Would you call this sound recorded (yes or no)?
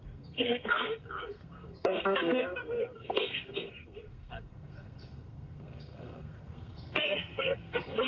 no